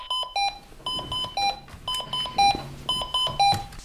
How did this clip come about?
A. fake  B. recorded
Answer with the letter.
B